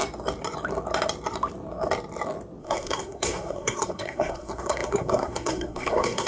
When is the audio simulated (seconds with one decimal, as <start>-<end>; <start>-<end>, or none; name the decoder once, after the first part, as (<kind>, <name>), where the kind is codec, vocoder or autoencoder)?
2.6-6.3 (codec, SNAC)